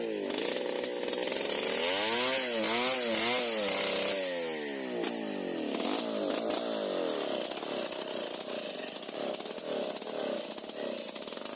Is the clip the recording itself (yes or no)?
yes